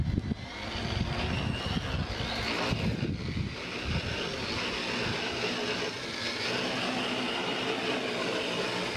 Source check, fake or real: real